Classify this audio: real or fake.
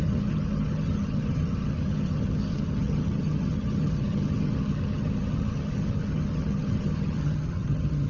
fake